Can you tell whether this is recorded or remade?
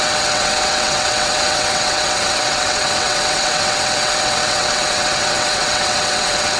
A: remade